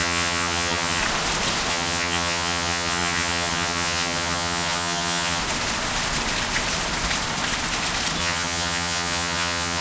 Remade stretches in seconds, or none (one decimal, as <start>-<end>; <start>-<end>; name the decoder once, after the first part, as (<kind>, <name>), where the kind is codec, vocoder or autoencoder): 0.0-1.0 (vocoder, HiFi-GAN); 1.7-5.4; 8.2-9.8